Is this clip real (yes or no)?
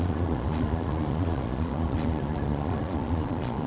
no